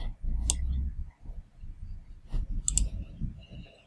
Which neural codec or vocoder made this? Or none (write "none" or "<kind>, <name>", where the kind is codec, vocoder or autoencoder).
none